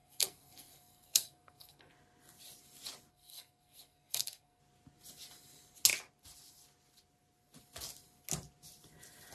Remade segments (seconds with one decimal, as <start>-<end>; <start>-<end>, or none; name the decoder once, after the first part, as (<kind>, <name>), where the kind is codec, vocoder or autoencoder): 0.0-1.9 (codec, SNAC); 3.1-4.6